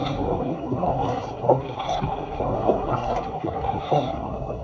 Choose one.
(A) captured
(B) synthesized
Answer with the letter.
B